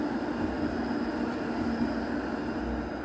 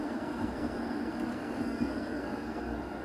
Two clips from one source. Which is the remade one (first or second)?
second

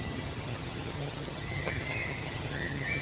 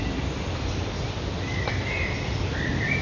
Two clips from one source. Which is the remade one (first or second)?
first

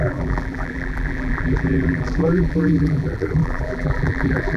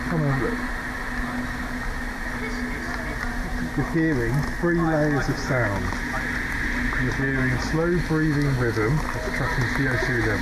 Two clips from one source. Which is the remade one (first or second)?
first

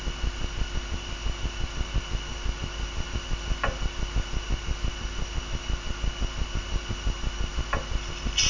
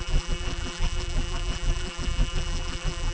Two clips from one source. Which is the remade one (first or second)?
second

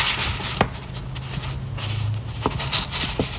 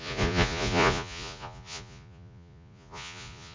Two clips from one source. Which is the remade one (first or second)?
second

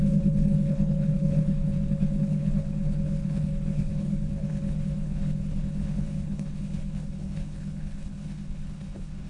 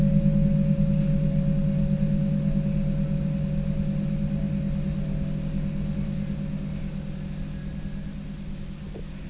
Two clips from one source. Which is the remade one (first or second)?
first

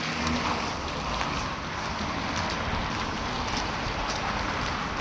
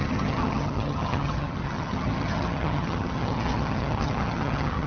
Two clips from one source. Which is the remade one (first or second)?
second